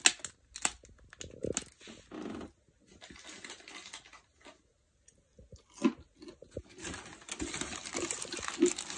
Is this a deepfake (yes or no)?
no